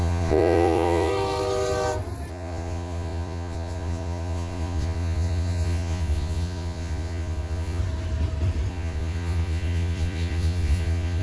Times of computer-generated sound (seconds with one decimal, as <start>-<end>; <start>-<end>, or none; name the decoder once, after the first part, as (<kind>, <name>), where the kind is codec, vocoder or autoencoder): 0.0-1.1 (vocoder, Vocos); 2.3-7.8; 8.7-11.2